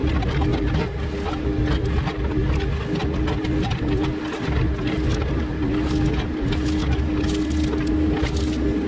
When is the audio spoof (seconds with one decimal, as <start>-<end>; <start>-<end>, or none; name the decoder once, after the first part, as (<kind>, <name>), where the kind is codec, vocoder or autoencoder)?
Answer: none